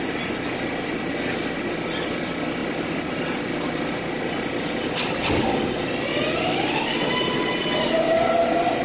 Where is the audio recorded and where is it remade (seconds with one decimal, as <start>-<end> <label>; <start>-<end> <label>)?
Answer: 0.0-8.8 recorded